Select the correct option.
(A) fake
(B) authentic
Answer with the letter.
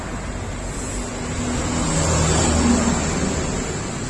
B